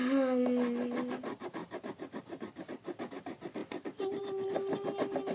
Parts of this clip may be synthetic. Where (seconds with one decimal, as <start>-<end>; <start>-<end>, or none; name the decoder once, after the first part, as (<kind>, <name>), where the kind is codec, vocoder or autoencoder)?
3.6-4.2 (vocoder, BigVGAN v2)